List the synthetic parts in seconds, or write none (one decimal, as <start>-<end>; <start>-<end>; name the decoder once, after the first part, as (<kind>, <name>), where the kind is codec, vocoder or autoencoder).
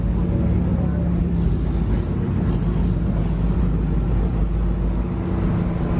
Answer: none